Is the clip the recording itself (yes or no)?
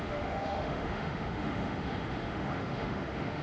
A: no